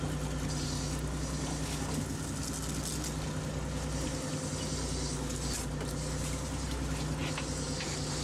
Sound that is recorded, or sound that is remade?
recorded